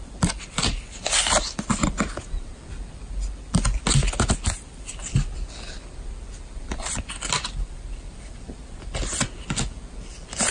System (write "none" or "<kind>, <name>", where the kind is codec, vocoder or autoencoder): none